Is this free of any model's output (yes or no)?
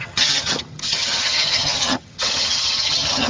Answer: no